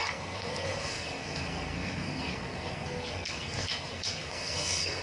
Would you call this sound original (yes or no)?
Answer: no